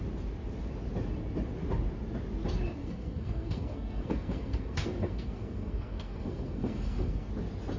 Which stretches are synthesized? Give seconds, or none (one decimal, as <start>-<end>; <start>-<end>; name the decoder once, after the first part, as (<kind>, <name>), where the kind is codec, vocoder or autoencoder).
2.8-7.3 (codec, SNAC)